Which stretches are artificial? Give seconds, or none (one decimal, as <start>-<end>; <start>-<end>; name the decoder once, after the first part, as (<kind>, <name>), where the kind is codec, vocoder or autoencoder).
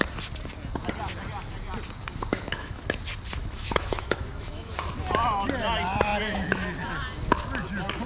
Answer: 2.3-2.8 (autoencoder, DAC-VAE); 3.4-4.7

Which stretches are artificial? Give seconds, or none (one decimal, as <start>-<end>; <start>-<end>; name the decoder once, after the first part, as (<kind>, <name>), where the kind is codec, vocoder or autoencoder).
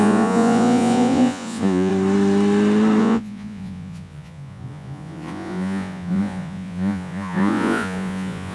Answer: 0.0-1.9 (vocoder, Vocos); 3.0-8.5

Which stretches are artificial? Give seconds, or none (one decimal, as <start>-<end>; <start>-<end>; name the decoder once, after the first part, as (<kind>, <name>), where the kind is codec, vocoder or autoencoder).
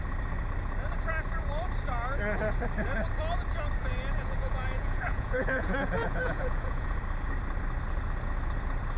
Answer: 3.8-7.0 (vocoder, Vocos)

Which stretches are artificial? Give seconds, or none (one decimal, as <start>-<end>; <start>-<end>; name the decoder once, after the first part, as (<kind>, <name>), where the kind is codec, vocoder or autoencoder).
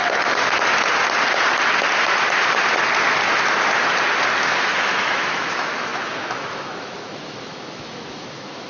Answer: 4.5-8.7 (autoencoder, DAC-VAE)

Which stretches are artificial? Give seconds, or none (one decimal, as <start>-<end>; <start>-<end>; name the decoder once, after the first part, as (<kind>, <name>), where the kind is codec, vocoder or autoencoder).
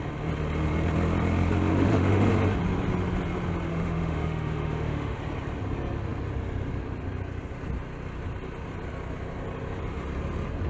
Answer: 1.7-2.3 (autoencoder, DAC-VAE); 3.7-5.2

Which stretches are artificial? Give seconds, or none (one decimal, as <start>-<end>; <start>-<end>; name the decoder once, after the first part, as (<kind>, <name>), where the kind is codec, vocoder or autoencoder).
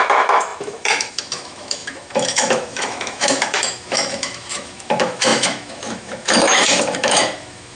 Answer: 0.0-7.8 (autoencoder, DAC-VAE)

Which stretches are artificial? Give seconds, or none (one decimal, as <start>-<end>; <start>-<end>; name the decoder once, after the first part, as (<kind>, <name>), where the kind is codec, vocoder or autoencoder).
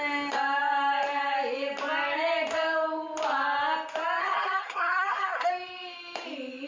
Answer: 4.2-5.5 (codec, SNAC)